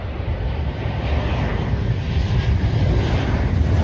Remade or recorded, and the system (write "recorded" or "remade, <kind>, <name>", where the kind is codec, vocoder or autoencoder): recorded